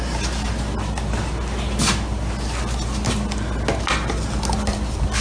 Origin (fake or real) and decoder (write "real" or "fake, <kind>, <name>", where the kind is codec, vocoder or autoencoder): real